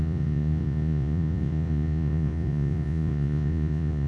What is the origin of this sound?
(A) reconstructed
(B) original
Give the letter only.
A